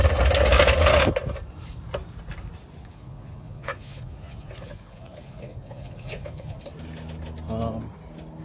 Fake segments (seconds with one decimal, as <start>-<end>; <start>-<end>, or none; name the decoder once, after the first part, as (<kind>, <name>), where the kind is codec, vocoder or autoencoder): 2.8-6.6 (vocoder, Vocos)